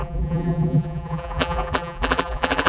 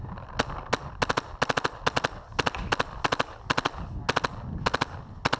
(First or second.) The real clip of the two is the second